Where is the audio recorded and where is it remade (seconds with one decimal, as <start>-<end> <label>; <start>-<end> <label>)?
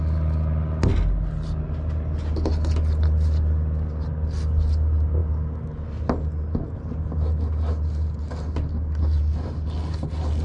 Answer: 0.0-10.4 recorded